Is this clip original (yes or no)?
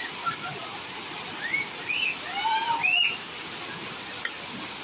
yes